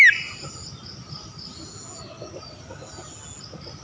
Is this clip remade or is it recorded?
recorded